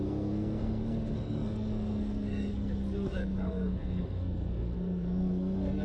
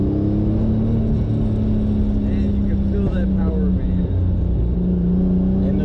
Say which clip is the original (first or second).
second